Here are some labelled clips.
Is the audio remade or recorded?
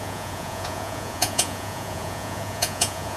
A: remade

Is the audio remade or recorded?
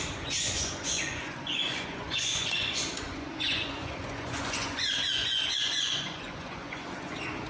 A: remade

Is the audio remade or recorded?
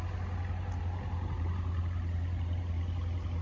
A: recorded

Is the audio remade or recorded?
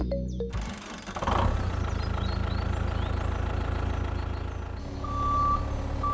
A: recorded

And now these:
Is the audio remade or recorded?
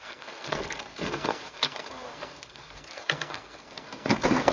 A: remade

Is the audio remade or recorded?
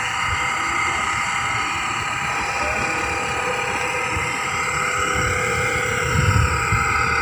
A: recorded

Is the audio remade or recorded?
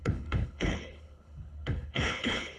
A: remade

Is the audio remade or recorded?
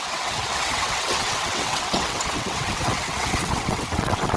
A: remade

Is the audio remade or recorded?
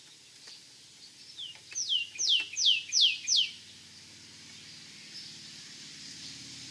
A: recorded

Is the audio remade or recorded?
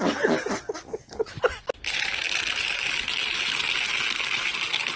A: recorded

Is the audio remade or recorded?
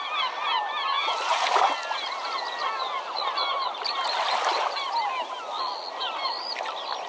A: recorded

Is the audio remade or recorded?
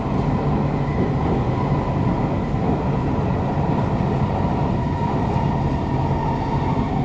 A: recorded